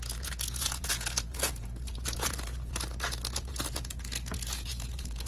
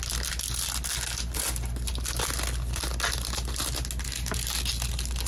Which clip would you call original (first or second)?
second